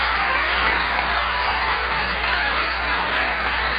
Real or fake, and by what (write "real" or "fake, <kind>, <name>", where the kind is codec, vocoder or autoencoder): fake, codec, DAC